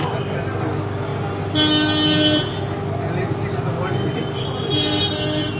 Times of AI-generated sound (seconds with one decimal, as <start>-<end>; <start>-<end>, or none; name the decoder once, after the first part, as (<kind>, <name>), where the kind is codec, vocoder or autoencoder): none